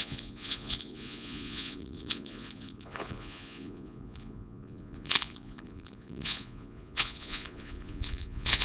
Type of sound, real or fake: fake